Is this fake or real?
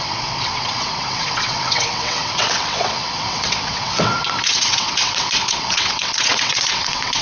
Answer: fake